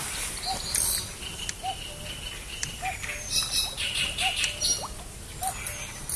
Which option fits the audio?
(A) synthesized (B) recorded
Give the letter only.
B